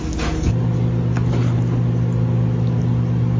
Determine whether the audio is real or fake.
real